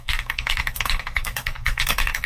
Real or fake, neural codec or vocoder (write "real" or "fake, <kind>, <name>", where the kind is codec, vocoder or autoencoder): fake, codec, SNAC